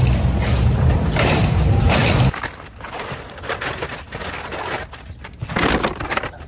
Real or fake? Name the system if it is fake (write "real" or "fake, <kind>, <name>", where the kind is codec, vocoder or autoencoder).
real